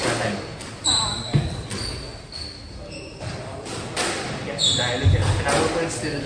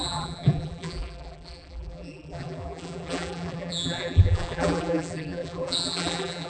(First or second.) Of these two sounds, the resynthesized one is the second